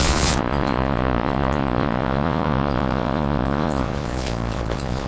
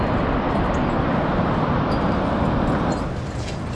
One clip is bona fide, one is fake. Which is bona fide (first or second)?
second